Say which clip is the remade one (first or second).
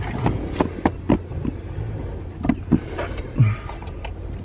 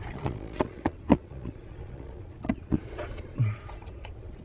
second